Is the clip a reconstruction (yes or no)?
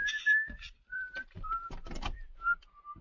yes